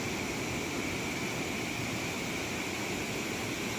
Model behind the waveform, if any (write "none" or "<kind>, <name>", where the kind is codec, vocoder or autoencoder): none